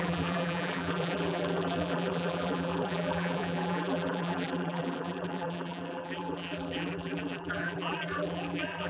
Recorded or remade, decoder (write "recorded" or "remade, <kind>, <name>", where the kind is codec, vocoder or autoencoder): remade, vocoder, BigVGAN v2